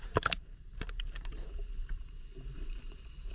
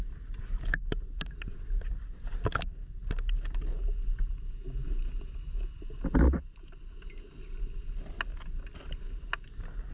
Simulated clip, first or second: first